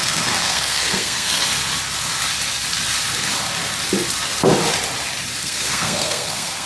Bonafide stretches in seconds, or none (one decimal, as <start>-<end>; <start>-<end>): 1.4-5.4